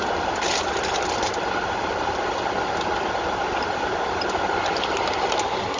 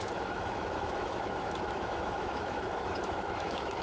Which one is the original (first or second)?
first